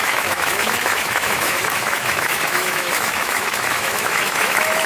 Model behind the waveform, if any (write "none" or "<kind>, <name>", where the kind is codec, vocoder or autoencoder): autoencoder, DAC-VAE